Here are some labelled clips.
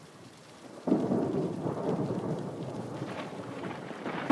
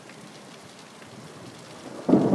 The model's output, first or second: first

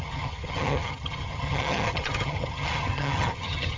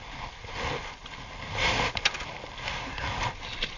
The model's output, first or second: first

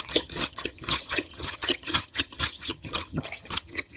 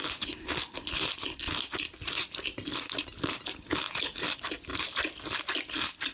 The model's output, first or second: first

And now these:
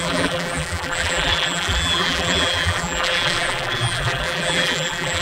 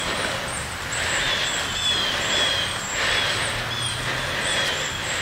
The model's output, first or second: first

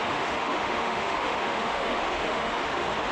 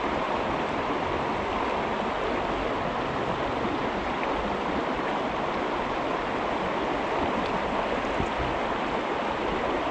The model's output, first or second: first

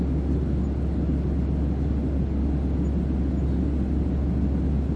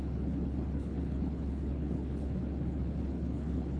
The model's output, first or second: second